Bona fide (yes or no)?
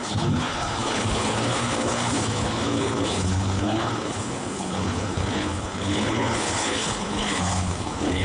no